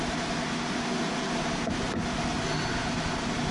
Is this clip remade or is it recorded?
recorded